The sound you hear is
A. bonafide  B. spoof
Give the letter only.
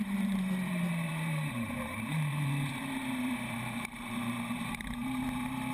B